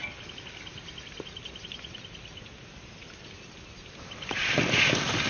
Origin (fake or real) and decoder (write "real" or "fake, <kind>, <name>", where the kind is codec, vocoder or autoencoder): real